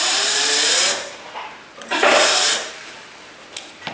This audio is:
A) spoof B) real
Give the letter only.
A